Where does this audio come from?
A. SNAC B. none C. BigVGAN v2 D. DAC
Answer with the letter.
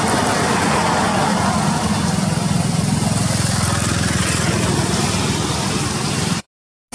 B